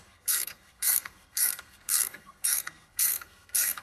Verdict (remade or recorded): remade